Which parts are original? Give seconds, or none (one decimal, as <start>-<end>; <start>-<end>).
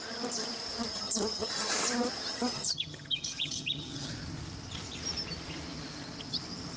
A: 0.0-0.9; 1.5-2.3; 4.1-6.8